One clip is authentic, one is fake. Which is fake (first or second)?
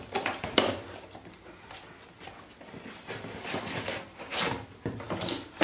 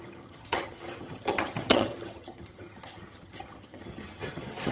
second